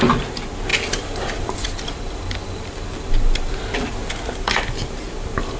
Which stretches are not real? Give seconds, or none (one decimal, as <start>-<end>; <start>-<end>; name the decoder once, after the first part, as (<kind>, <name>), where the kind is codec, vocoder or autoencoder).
none